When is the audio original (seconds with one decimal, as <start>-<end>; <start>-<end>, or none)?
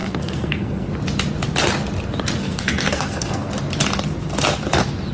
0.9-2.4; 3.5-5.1